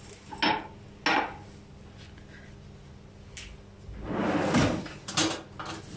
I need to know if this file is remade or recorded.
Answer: recorded